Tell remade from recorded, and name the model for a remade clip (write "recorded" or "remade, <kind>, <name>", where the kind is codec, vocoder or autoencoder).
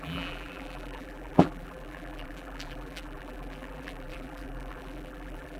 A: remade, vocoder, BigVGAN v2